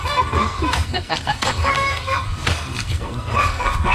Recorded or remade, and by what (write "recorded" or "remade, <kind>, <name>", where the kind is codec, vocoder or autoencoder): remade, codec, SNAC